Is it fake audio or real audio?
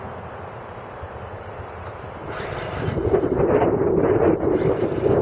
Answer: real